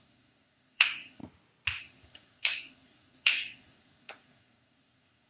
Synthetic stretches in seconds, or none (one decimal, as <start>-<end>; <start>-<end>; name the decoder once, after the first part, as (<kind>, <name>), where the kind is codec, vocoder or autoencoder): 0.0-1.2 (codec, SNAC); 1.8-5.3